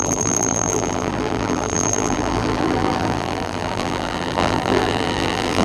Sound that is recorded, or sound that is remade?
remade